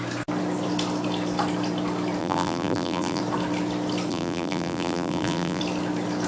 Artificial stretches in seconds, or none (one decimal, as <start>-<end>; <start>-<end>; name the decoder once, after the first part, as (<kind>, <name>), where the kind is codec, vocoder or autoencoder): 2.2-3.2 (vocoder, BigVGAN v2); 4.1-5.6